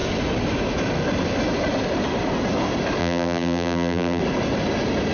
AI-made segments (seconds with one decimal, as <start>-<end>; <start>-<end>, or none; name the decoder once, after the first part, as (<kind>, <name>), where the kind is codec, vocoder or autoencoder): 3.0-4.2 (vocoder, BigVGAN v2)

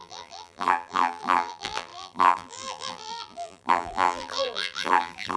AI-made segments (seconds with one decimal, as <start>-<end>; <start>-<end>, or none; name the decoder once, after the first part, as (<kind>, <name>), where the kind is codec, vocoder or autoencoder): 0.0-5.4 (vocoder, BigVGAN v2)

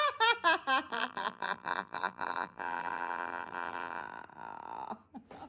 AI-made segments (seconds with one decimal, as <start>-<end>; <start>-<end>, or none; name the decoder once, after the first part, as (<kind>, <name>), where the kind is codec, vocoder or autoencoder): 0.9-4.0 (vocoder, BigVGAN v2)

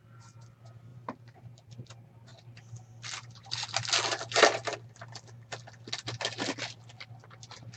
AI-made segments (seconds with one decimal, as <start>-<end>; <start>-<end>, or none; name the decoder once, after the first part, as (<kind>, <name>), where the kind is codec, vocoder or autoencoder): 0.9-1.9 (vocoder, BigVGAN v2)

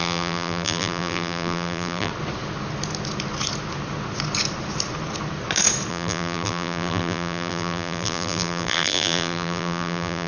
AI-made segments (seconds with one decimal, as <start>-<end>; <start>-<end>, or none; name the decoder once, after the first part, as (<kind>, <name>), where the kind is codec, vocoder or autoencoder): 0.0-2.1 (vocoder, BigVGAN v2); 5.9-10.3

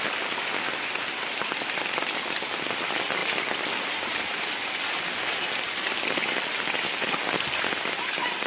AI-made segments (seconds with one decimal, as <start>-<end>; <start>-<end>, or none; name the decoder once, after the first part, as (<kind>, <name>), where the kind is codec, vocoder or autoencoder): none

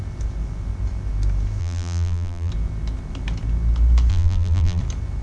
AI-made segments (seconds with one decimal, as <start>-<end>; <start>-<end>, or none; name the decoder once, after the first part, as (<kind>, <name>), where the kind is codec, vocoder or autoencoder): 1.6-2.5 (vocoder, BigVGAN v2); 4.1-4.8